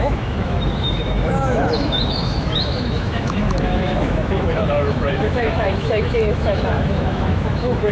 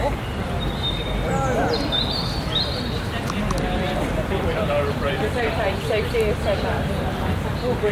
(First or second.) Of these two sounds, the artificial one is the first